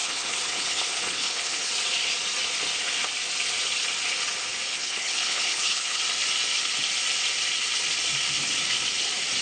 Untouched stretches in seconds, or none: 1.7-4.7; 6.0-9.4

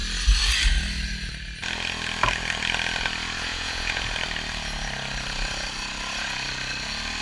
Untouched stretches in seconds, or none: 0.0-3.5; 4.1-7.2

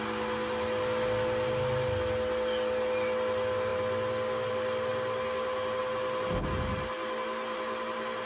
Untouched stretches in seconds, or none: 0.0-8.3

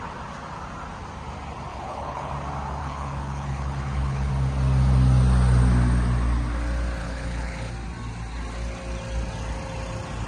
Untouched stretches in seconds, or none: 0.0-1.7; 2.3-2.8; 4.3-7.0; 7.7-10.3

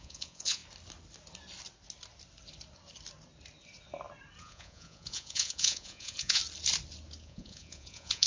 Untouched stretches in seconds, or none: 0.6-4.4; 6.4-7.2